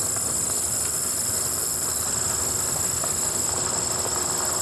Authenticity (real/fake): real